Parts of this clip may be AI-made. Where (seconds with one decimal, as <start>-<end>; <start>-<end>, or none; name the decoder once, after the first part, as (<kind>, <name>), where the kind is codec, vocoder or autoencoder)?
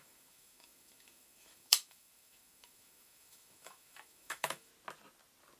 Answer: 0.0-4.7 (autoencoder, DAC-VAE)